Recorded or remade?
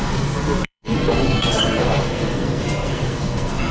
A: remade